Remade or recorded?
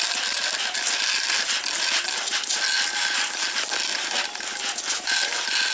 recorded